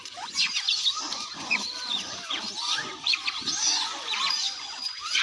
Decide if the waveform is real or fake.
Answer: fake